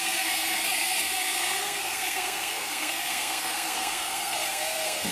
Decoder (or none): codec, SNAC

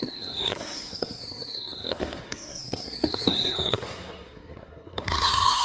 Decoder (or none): codec, SNAC